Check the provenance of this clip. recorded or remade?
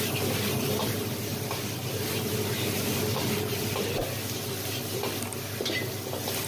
recorded